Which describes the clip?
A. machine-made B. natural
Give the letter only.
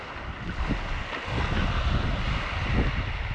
B